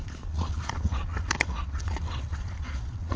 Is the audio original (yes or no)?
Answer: no